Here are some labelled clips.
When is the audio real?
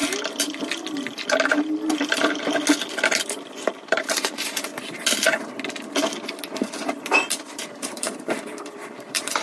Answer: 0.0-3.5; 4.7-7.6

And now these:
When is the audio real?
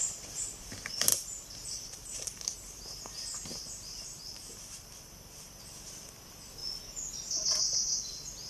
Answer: 0.0-1.1; 5.6-8.5